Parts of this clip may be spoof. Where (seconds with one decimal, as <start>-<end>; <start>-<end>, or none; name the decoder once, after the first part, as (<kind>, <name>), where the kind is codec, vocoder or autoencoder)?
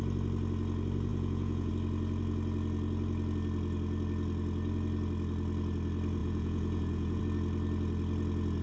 1.1-1.7 (vocoder, Vocos); 6.2-7.2